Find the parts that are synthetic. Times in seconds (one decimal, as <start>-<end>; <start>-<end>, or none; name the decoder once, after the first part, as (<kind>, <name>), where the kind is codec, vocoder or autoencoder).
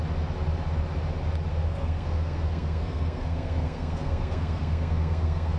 1.5-5.6 (codec, SNAC)